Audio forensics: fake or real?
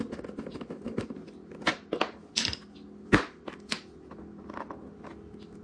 real